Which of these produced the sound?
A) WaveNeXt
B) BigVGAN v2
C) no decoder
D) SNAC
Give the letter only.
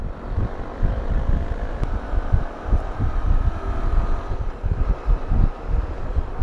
B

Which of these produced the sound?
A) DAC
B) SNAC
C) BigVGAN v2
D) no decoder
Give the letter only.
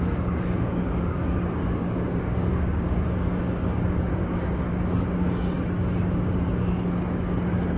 A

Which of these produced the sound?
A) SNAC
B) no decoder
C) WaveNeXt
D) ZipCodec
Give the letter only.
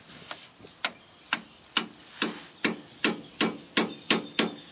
B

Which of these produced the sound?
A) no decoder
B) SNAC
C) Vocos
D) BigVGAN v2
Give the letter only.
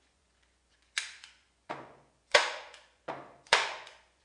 C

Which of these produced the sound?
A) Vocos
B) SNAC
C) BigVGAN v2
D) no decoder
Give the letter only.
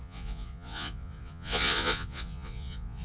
A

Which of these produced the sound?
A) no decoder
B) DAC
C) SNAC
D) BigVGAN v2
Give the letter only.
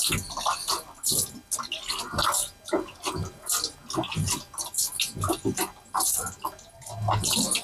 A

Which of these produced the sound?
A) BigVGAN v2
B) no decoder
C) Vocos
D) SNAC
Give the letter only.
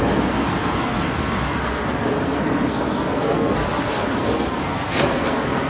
D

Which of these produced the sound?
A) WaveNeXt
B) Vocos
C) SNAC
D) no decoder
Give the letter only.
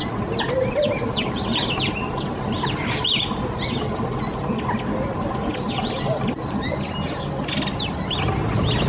D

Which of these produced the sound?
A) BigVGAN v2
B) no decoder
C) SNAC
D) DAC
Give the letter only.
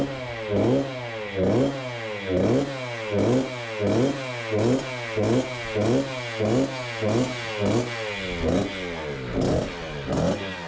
B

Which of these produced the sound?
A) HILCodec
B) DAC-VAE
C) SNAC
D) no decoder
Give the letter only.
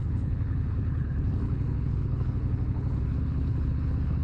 A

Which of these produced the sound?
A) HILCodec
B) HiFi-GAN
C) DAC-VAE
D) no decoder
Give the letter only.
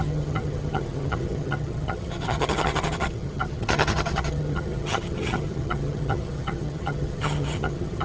B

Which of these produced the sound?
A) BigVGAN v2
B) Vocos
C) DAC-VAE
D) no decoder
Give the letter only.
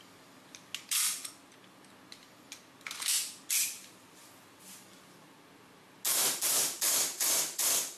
D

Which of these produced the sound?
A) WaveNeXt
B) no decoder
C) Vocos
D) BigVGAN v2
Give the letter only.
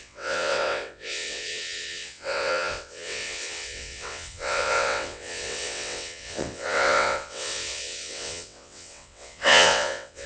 A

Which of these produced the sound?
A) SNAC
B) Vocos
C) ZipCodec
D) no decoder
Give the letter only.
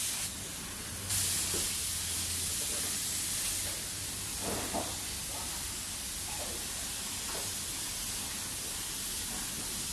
D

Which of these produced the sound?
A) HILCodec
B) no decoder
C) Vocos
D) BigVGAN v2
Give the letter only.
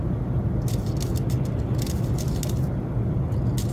B